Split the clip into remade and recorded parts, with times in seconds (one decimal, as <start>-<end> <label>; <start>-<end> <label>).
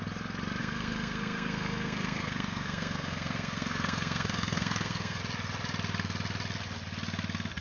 0.0-0.6 recorded; 0.6-5.2 remade; 5.2-7.6 recorded